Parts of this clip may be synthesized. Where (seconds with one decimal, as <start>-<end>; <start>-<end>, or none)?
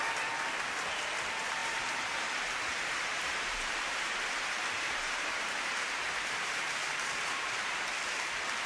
1.6-2.3; 3.1-7.7